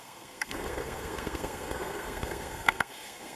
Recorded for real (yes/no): no